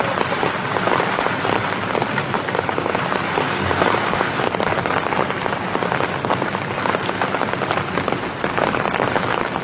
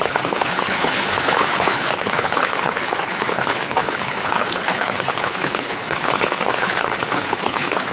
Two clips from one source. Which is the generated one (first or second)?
second